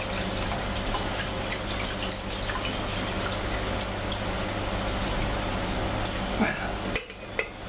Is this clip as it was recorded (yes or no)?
yes